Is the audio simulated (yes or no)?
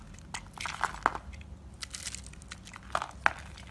no